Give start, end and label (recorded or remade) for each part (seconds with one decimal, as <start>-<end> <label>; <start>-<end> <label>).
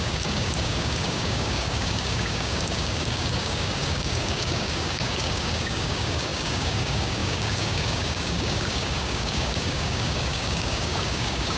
0.0-11.6 remade